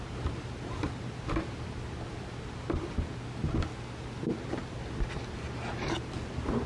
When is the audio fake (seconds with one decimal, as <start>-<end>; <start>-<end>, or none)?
none